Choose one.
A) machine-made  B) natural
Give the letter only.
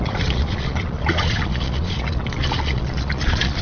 A